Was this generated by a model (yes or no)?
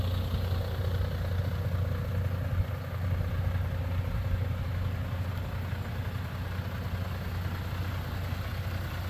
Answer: no